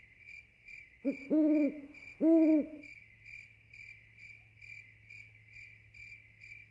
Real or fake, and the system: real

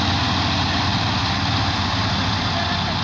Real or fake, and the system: real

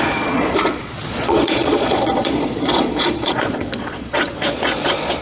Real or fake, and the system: fake, vocoder, Vocos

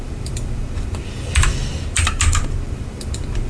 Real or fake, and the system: fake, vocoder, BigVGAN v2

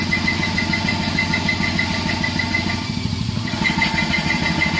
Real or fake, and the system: real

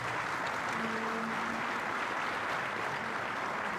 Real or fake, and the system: real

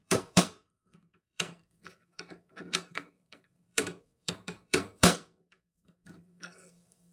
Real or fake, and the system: fake, codec, SNAC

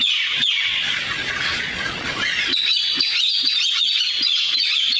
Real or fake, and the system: fake, vocoder, Vocos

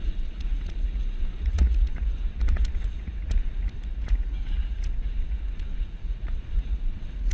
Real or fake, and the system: fake, vocoder, Vocos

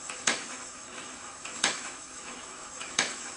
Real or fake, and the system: fake, autoencoder, DAC-VAE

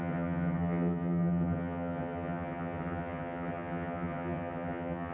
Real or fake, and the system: fake, vocoder, HiFi-GAN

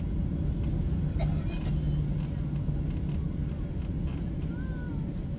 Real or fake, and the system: real